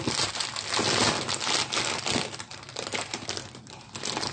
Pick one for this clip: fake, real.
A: real